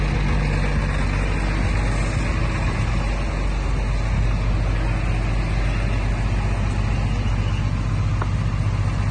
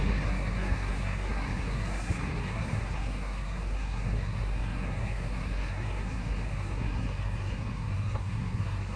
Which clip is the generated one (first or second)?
second